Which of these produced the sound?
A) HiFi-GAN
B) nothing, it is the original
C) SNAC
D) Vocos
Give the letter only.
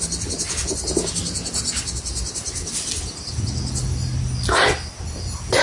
B